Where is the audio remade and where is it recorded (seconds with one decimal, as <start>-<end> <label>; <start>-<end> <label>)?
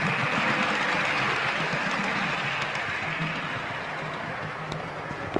0.0-5.4 recorded